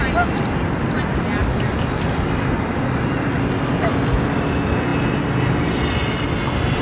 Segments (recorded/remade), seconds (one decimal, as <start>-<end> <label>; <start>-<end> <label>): 0.0-6.8 recorded